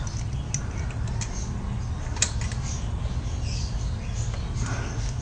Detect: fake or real real